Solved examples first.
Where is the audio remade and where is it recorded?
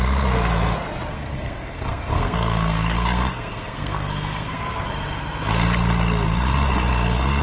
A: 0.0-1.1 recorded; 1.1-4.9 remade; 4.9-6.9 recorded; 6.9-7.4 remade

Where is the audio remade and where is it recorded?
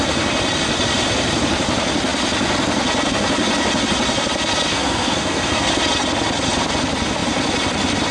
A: 0.0-4.7 recorded; 4.7-5.7 remade; 5.7-8.1 recorded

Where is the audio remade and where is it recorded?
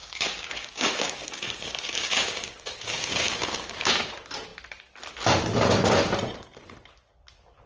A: 0.0-3.9 remade; 3.9-7.7 recorded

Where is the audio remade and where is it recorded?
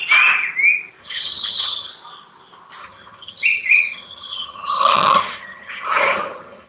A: 0.0-1.0 recorded; 1.0-1.9 remade; 1.9-2.8 recorded; 2.8-6.7 remade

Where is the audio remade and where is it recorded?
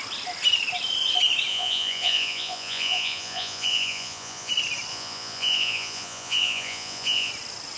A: 0.0-1.5 recorded; 1.5-4.5 remade; 4.5-4.9 recorded; 4.9-7.3 remade; 7.3-7.8 recorded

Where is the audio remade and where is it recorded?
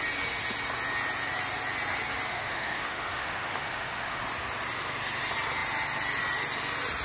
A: 0.0-2.3 recorded; 2.3-4.2 remade; 4.2-7.0 recorded